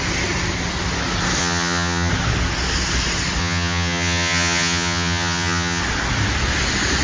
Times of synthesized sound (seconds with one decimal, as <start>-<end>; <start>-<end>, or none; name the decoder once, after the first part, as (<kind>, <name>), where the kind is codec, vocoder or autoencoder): 1.4-2.1 (vocoder, HiFi-GAN); 3.4-5.8